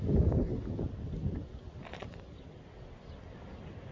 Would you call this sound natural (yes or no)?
yes